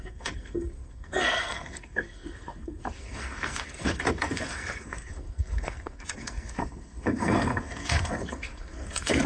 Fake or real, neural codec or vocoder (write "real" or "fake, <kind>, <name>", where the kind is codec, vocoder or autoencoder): fake, codec, SNAC